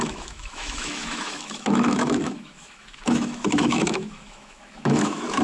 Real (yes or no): no